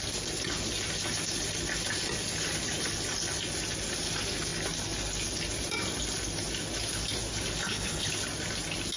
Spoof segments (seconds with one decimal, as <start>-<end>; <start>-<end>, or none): 7.6-8.1